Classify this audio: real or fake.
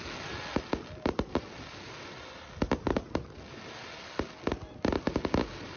real